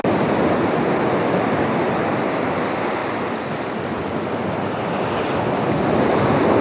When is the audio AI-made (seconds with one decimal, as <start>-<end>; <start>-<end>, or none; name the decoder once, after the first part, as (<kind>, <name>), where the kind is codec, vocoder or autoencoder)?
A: none